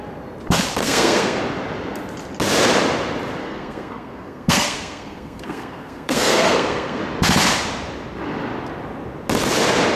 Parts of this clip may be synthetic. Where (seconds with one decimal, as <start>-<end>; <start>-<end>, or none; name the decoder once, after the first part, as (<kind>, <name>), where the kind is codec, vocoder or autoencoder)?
0.8-1.4 (codec, SNAC); 3.4-7.0